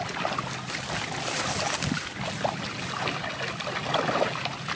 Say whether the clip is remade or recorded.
recorded